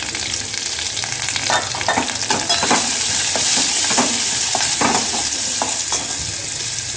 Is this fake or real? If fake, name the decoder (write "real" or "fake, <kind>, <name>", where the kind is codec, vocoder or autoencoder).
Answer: real